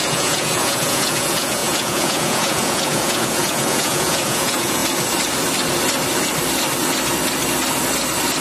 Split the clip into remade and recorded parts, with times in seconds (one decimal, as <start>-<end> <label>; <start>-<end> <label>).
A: 0.0-4.8 remade; 4.8-8.4 recorded